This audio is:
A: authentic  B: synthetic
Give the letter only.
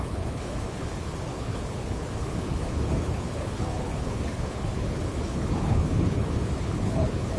B